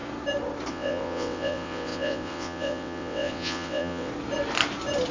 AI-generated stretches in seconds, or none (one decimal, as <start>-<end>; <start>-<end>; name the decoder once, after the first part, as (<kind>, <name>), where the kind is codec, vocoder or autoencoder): 0.7-4.1 (vocoder, WaveNeXt)